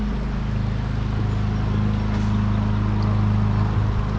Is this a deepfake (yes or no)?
no